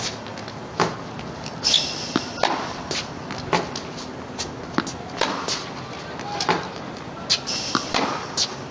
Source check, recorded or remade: recorded